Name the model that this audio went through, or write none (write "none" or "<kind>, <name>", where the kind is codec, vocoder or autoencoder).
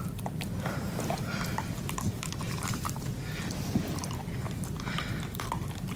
none